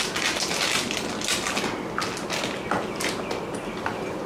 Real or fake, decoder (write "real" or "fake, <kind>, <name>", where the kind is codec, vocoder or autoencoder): real